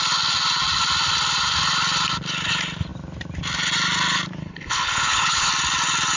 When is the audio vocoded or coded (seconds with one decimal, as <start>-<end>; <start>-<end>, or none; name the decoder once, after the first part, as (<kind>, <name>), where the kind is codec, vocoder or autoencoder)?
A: 4.4-5.5 (codec, HILCodec)